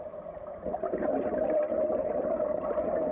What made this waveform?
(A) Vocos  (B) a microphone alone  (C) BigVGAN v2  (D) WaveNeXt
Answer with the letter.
B